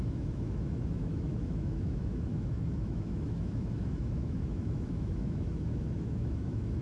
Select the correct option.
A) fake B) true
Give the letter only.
A